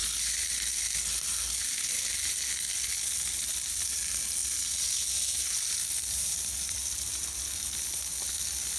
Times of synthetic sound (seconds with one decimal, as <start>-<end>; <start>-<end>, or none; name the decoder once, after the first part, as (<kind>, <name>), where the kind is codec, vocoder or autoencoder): none